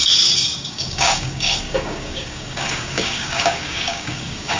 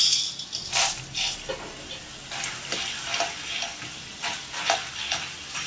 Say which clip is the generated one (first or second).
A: first